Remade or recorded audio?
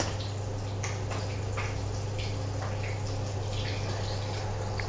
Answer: recorded